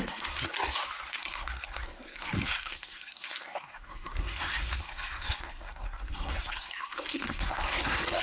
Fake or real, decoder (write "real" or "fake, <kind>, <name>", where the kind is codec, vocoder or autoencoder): fake, codec, SNAC